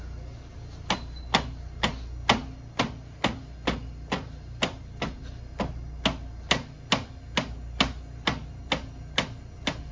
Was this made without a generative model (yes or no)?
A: yes